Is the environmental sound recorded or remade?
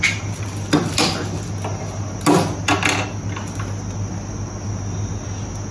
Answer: recorded